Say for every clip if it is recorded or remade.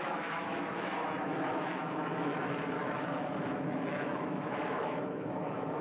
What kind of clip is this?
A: remade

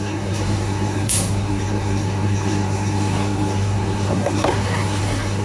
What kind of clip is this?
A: remade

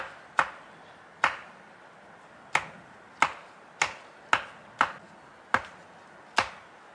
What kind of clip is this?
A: recorded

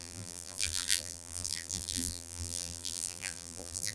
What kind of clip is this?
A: remade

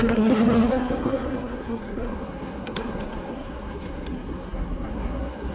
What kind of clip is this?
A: remade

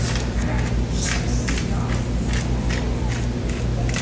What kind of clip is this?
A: recorded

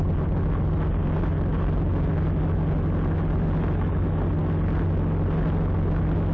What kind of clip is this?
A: recorded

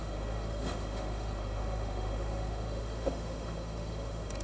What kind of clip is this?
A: remade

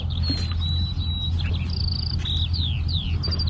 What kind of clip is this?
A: recorded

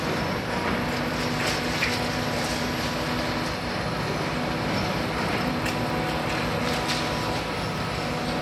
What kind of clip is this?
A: recorded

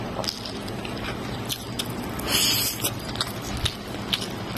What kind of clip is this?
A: recorded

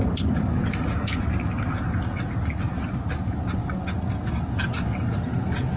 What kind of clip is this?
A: recorded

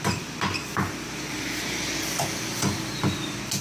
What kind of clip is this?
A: recorded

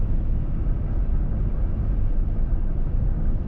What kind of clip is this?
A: remade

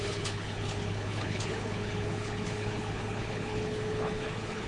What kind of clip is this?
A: remade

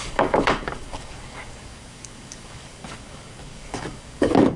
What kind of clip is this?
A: remade